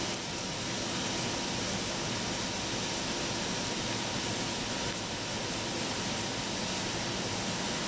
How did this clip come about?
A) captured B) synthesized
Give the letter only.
A